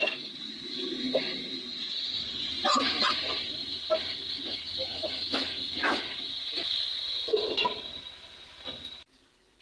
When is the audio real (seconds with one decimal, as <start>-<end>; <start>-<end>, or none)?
0.0-1.7; 2.5-9.6